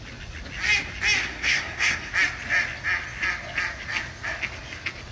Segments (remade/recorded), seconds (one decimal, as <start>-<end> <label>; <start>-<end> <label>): 0.0-1.2 recorded; 1.2-2.1 remade; 2.1-5.1 recorded